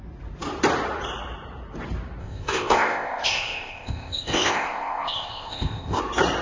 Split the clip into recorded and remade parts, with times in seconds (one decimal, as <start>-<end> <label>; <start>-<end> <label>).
0.0-2.2 recorded; 2.2-6.0 remade; 6.0-6.4 recorded